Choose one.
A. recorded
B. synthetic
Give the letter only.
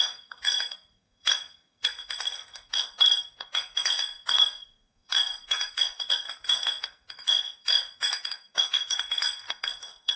B